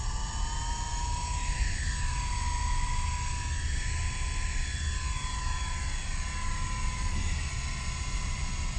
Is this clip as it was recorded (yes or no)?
yes